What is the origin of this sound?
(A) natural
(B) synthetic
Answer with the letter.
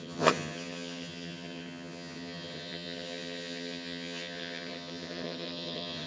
B